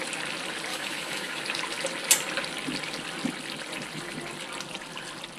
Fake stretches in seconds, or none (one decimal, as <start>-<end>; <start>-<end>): 0.7-1.4